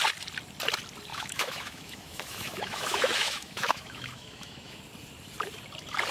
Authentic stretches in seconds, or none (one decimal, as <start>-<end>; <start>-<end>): 0.0-1.1; 4.8-6.1